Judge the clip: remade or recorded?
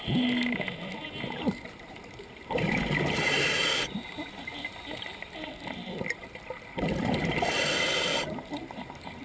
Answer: recorded